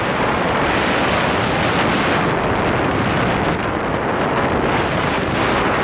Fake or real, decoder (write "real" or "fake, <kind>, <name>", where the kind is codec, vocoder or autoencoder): real